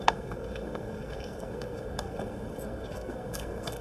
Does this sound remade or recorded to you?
remade